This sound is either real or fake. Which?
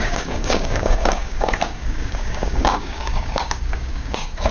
fake